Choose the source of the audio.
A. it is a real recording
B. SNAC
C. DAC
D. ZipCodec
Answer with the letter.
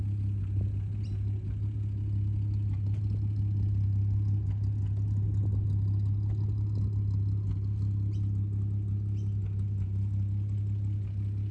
A